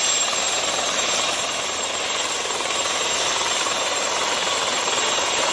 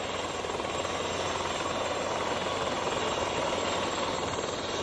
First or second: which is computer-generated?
first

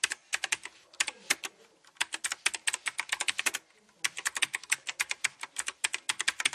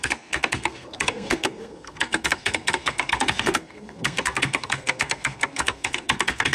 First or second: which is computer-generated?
second